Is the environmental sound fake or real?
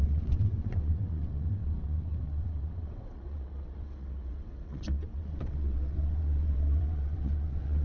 fake